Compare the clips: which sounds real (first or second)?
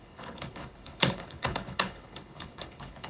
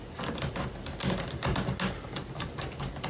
second